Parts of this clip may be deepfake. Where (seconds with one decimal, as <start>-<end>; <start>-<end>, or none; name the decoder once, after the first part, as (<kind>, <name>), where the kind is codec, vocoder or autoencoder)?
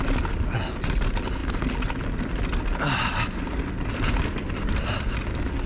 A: none